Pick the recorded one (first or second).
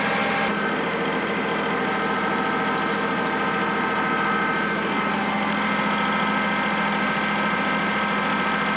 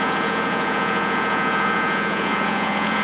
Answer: first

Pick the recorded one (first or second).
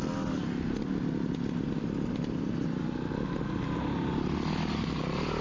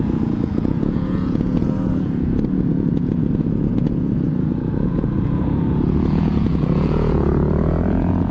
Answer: first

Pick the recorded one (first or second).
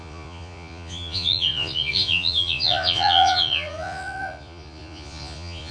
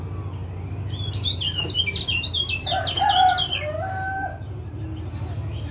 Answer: second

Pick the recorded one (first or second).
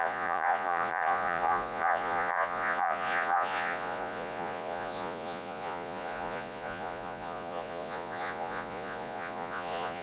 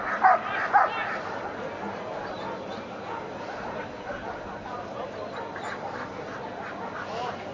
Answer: second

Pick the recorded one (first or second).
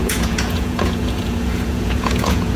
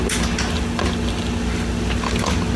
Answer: second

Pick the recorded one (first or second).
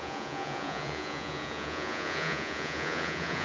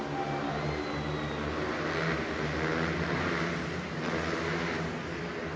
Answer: second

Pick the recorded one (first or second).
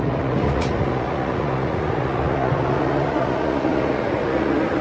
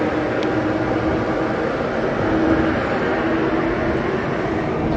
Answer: second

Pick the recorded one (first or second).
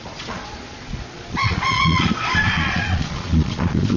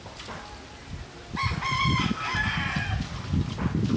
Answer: second